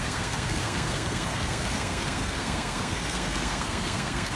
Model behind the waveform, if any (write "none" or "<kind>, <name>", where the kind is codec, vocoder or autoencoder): codec, SNAC